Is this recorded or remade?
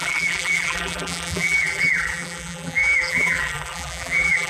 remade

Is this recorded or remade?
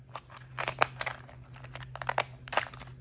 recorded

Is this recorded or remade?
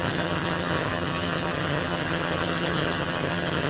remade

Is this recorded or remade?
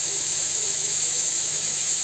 remade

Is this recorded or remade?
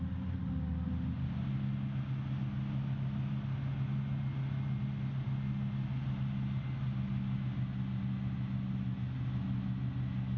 recorded